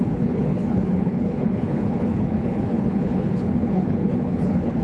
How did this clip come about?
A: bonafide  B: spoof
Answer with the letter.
B